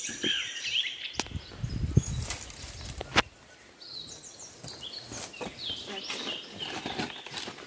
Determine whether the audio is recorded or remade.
recorded